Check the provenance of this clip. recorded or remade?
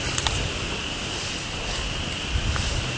recorded